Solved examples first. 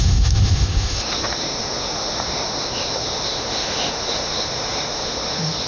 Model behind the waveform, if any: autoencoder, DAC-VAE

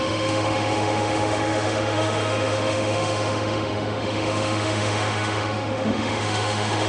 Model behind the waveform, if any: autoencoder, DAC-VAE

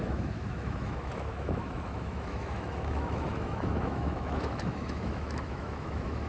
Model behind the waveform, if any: autoencoder, DAC-VAE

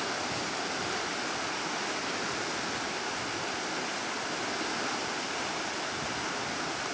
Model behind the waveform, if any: none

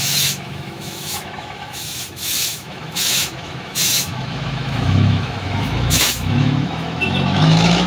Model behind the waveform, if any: autoencoder, DAC-VAE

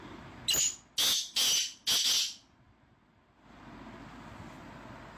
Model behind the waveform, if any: none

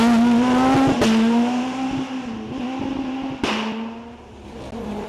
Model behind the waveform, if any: none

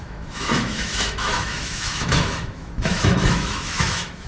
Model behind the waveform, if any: autoencoder, DAC-VAE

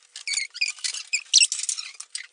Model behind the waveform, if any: none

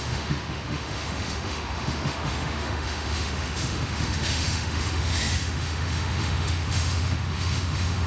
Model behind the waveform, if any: autoencoder, DAC-VAE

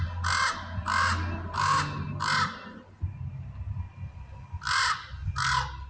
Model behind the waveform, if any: none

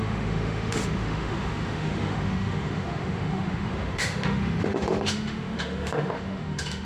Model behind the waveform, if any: autoencoder, DAC-VAE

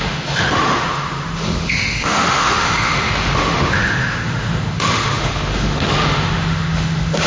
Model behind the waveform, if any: autoencoder, DAC-VAE